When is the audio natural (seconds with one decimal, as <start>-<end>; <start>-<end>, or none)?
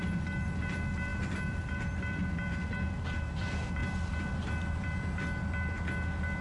3.8-6.4